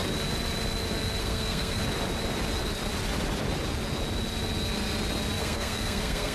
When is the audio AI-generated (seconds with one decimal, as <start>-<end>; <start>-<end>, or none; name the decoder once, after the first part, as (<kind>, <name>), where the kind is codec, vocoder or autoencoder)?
1.2-1.8 (codec, SNAC); 5.4-6.3